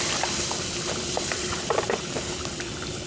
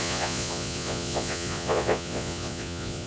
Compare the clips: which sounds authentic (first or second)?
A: first